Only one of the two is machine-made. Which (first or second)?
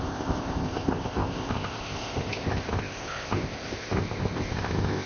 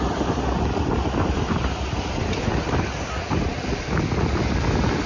first